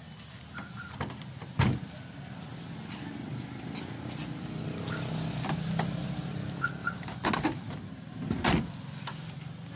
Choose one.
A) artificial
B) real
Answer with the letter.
B